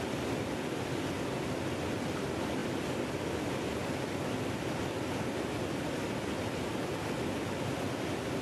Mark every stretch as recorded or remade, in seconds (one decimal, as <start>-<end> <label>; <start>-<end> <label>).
0.0-3.8 recorded; 3.8-4.8 remade; 4.8-8.4 recorded